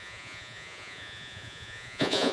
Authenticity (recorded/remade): remade